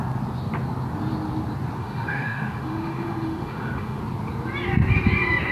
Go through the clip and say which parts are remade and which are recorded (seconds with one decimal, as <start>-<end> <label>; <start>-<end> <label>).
0.0-1.8 recorded; 1.8-4.0 remade; 4.0-5.5 recorded